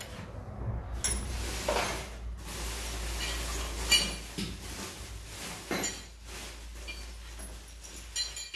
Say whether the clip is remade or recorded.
recorded